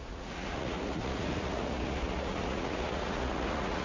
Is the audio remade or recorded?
remade